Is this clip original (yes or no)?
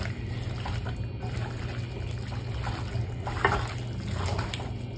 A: yes